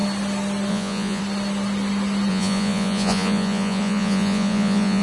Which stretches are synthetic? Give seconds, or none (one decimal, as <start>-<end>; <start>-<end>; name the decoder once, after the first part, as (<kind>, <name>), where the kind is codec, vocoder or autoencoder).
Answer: 0.7-1.2 (vocoder, Vocos); 2.3-5.0